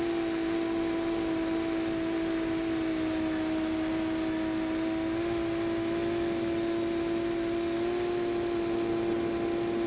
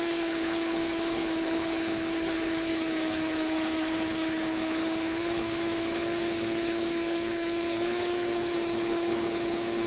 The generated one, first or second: second